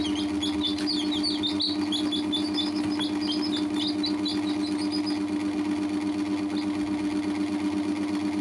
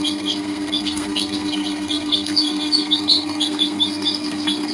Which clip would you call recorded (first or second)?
first